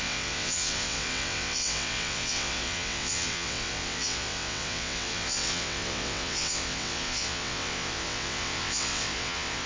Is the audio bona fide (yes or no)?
no